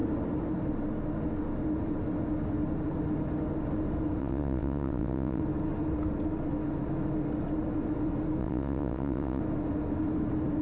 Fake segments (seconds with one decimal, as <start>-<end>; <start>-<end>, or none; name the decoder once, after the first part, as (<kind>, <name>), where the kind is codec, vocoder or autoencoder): 4.2-5.4 (vocoder, WaveNeXt); 8.4-9.4